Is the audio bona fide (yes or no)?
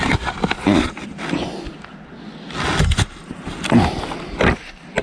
yes